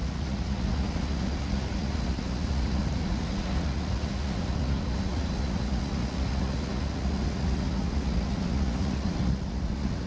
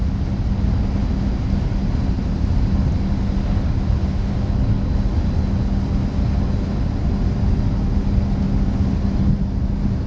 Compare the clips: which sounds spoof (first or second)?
first